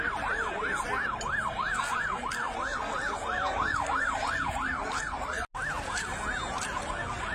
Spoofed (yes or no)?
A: no